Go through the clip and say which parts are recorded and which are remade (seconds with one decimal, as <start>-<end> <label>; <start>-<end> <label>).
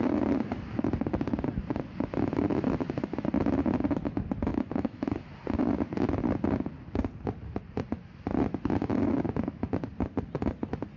0.0-4.5 recorded; 4.5-5.1 remade; 5.1-11.0 recorded